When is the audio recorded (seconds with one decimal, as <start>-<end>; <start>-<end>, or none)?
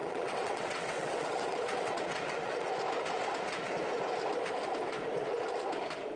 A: 2.7-6.2